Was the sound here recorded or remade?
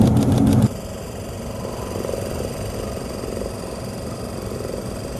recorded